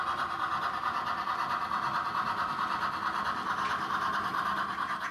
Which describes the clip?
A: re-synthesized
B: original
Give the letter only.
B